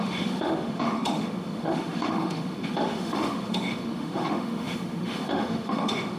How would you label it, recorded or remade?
remade